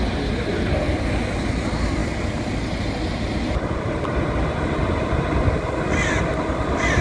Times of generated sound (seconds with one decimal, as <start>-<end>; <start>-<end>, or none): none